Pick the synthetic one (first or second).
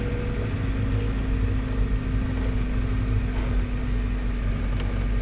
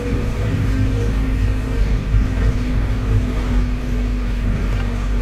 second